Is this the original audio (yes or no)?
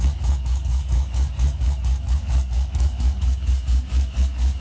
no